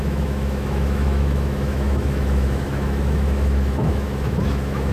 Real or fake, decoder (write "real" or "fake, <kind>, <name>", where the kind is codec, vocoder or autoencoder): fake, autoencoder, DAC-VAE